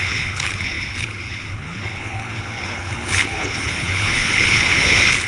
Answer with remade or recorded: remade